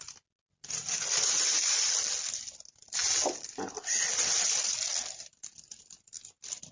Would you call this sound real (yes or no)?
yes